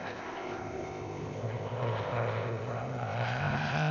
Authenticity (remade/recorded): remade